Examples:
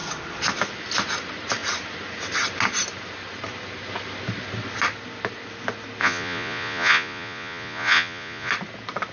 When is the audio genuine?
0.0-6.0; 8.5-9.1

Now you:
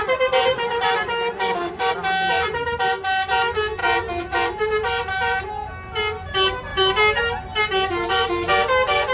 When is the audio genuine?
0.0-1.4; 1.9-9.1

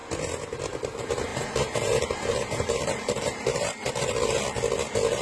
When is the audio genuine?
0.0-1.3; 4.4-5.2

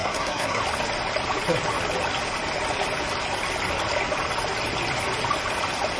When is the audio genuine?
0.6-6.0